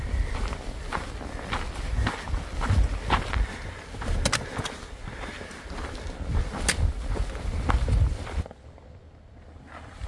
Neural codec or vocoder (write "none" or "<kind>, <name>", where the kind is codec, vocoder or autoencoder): none